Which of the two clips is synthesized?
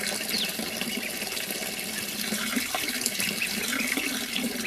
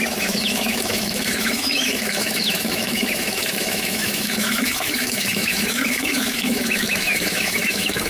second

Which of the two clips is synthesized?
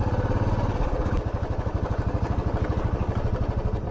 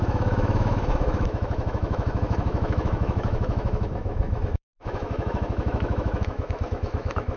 second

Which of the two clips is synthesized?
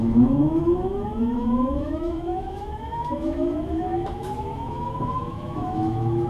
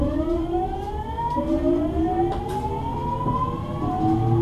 first